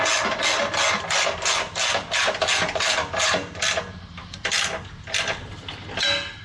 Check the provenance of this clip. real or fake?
real